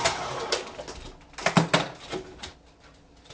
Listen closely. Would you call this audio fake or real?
real